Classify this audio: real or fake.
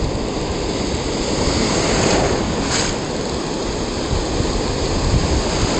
real